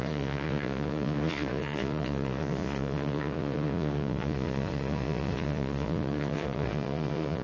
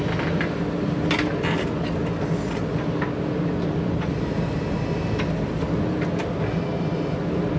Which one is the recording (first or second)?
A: second